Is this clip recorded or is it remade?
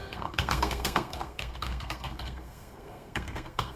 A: remade